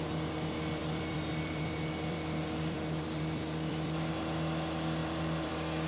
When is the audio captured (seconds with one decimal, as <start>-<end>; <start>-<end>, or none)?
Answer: 0.0-0.8; 4.1-5.0; 5.5-5.9